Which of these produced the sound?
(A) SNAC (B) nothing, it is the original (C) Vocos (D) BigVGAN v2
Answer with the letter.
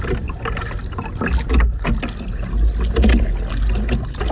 B